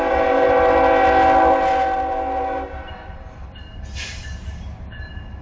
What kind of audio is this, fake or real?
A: real